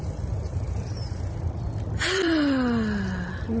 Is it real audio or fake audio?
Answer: real